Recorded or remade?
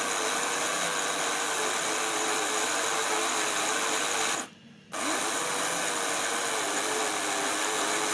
recorded